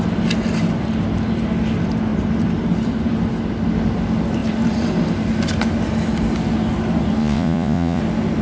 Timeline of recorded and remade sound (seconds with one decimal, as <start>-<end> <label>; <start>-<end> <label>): 0.0-7.2 recorded; 7.2-8.0 remade; 8.0-8.4 recorded